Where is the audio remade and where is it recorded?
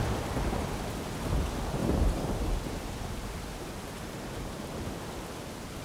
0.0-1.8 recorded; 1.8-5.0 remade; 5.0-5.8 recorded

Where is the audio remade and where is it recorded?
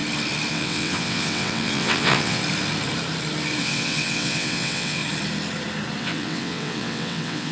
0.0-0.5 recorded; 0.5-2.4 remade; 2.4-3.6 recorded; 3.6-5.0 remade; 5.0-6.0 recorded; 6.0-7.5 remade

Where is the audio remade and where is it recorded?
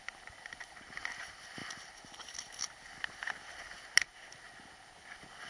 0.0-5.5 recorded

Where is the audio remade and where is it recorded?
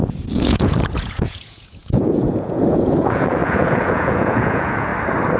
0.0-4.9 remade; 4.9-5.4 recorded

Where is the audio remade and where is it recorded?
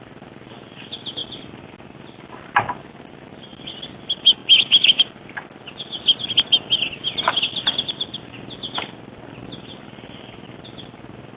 0.0-11.4 recorded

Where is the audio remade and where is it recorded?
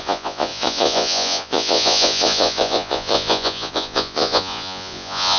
0.0-5.4 remade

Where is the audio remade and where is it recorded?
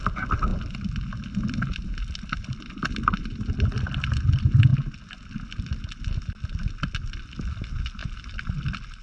0.0-9.0 recorded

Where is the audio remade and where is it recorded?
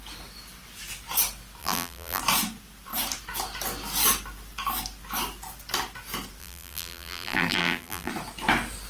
0.0-1.6 recorded; 1.6-2.2 remade; 2.2-6.4 recorded; 6.4-8.1 remade; 8.1-8.9 recorded